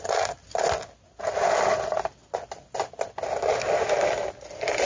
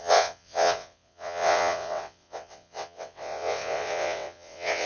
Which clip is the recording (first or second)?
first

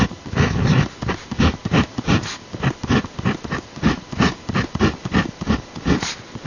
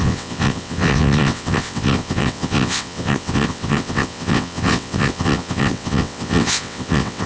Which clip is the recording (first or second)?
first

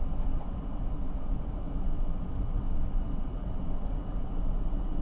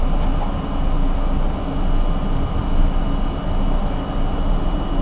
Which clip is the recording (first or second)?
second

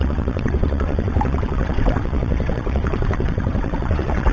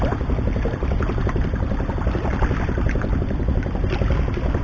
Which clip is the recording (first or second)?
second